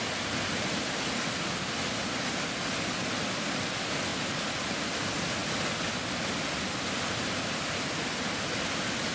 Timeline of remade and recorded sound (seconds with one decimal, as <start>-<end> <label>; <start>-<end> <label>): 0.0-9.1 recorded

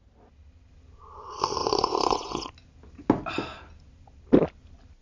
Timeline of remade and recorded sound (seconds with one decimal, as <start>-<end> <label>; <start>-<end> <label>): 0.0-1.6 recorded; 1.6-2.3 remade; 2.3-5.0 recorded